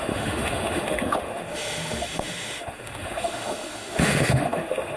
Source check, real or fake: fake